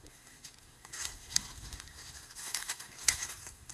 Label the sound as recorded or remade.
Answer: remade